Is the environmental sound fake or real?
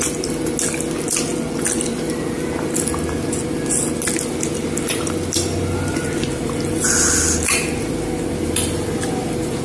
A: real